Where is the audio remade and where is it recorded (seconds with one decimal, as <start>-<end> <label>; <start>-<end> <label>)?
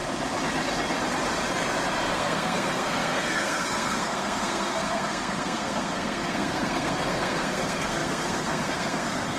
0.0-2.1 recorded; 2.1-9.4 remade